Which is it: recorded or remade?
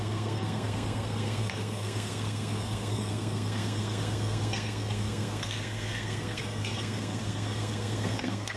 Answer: remade